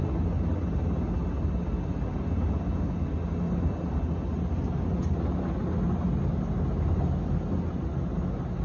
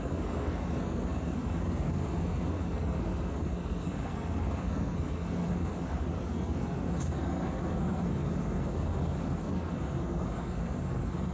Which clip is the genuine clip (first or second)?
first